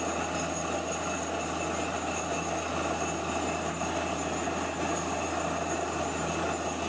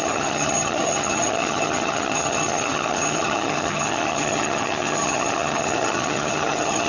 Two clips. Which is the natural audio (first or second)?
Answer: first